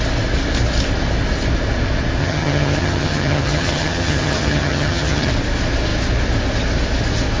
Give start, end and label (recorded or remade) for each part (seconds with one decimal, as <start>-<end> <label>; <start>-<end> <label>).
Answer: 0.0-2.2 recorded; 2.2-5.3 remade; 5.3-7.4 recorded